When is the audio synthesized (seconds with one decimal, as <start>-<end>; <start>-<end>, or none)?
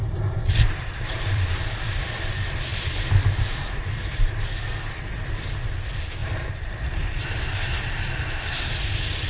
0.0-9.3